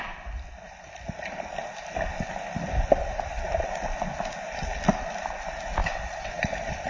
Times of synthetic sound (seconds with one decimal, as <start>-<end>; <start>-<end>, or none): 5.8-6.3